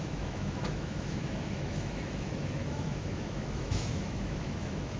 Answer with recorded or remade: remade